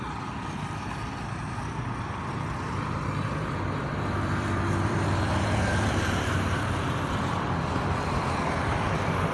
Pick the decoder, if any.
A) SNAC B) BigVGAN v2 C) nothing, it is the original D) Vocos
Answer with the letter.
B